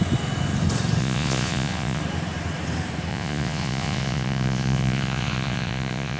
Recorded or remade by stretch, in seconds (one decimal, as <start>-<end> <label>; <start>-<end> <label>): 0.0-1.0 recorded; 1.0-2.0 remade; 2.0-3.1 recorded; 3.1-6.2 remade